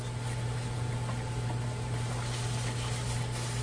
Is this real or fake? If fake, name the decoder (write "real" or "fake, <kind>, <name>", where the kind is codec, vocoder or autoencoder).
real